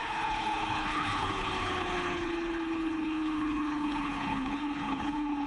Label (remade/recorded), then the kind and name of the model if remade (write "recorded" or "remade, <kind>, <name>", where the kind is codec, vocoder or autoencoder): remade, codec, HILCodec